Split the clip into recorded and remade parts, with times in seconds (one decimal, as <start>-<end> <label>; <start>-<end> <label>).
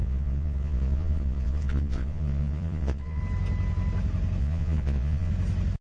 0.0-3.2 remade; 3.2-4.4 recorded; 4.4-5.3 remade; 5.3-5.8 recorded